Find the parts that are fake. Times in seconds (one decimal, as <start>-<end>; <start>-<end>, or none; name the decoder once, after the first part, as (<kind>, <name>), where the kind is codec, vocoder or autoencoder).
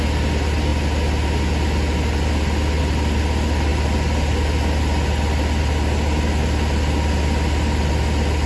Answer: none